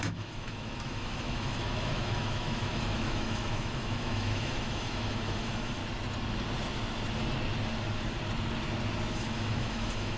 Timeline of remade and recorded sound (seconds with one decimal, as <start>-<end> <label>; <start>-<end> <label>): 0.0-5.8 remade; 5.8-9.1 recorded; 9.1-10.2 remade